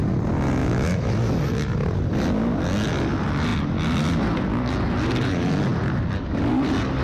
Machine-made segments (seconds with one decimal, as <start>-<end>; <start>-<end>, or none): 0.6-1.1

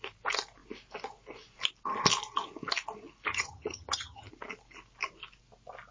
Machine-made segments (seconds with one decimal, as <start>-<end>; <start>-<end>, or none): 3.3-4.3